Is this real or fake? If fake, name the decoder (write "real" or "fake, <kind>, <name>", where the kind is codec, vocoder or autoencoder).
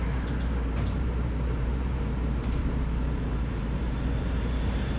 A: fake, vocoder, BigVGAN v2